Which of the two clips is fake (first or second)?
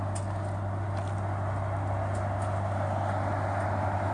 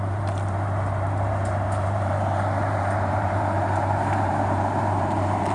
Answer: second